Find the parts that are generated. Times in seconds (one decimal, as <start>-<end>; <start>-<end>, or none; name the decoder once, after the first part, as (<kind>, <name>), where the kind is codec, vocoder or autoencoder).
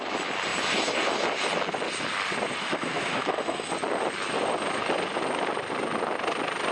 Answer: 2.6-3.7 (autoencoder, DAC-VAE)